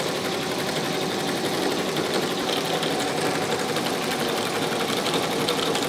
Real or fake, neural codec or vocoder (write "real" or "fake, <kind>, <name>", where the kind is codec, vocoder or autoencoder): real